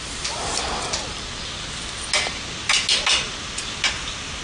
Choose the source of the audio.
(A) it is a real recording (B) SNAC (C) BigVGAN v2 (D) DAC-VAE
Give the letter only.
A